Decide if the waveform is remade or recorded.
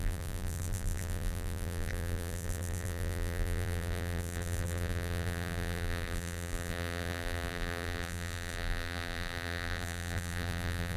remade